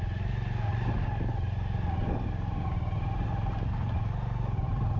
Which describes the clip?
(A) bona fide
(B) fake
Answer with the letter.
A